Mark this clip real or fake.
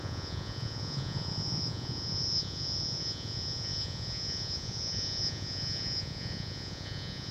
fake